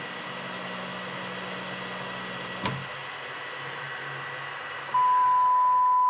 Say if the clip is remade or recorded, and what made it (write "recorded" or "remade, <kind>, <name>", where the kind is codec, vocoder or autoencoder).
recorded